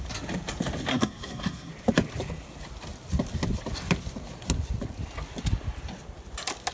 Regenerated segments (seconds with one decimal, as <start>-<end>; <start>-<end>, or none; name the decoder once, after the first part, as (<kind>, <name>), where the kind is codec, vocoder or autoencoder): 0.9-1.7 (codec, SNAC)